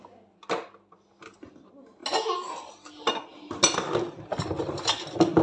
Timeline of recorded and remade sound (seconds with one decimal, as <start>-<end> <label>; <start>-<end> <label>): 0.0-5.4 recorded